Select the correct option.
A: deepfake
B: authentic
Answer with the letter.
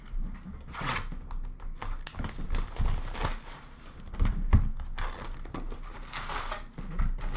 B